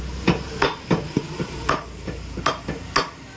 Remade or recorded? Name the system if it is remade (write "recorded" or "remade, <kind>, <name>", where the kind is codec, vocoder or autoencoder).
recorded